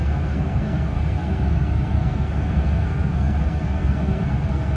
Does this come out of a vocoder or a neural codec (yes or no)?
yes